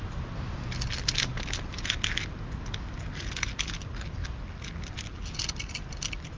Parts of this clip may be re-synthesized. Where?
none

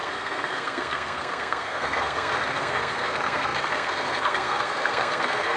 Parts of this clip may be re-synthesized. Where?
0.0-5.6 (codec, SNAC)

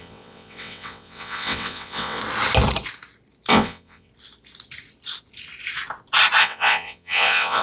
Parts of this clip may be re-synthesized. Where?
0.0-2.2 (vocoder, WaveNeXt); 3.5-4.1; 6.4-7.6

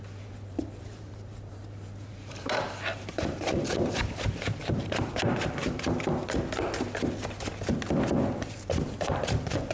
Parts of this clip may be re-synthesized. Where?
0.0-6.2 (vocoder, BigVGAN v2); 8.3-9.7

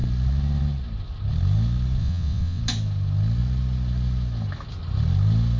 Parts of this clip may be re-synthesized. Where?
2.0-2.6 (vocoder, WaveNeXt)